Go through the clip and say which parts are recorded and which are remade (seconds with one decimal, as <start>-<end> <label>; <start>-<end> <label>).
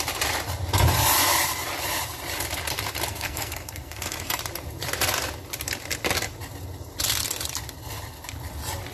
0.0-3.1 recorded; 3.1-4.4 remade; 4.4-8.9 recorded